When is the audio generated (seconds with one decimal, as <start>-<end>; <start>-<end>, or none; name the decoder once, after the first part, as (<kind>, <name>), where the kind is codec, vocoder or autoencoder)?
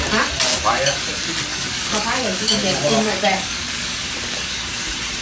1.5-4.6 (codec, DAC)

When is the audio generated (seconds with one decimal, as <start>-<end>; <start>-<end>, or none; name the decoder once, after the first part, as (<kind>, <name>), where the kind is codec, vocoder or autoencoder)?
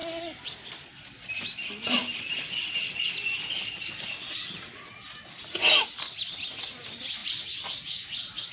none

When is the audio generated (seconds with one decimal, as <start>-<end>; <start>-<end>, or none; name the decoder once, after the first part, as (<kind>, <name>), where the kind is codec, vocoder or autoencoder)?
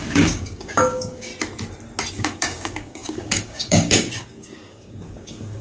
0.0-1.3 (codec, DAC); 2.1-5.6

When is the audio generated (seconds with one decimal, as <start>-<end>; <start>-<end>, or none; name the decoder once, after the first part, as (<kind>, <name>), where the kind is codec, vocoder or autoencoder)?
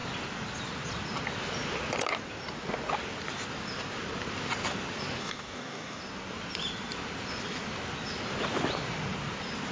5.2-6.0 (codec, DAC)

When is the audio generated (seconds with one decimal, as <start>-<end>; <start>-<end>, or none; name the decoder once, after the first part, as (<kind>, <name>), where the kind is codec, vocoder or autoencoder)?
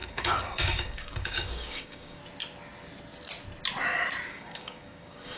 0.0-2.2 (codec, DAC); 4.3-5.4